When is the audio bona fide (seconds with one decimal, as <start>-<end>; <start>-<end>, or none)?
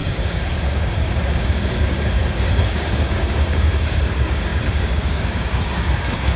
none